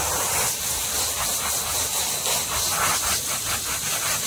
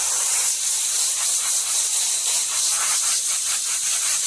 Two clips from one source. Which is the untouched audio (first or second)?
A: first